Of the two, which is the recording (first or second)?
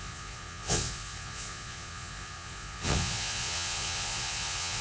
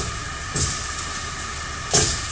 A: second